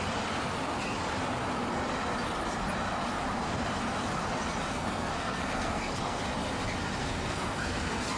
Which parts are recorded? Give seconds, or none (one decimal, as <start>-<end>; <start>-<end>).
0.0-4.7; 6.2-7.0